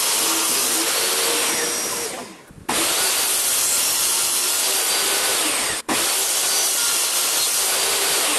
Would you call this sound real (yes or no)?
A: yes